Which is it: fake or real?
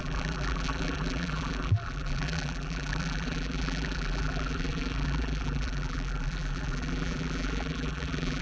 fake